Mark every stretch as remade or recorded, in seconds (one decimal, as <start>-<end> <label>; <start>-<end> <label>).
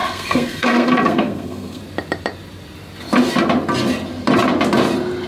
0.0-1.8 remade; 1.8-5.3 recorded